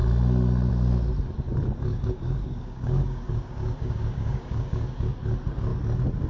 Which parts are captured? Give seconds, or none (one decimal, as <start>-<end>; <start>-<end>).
0.0-1.9; 5.2-6.3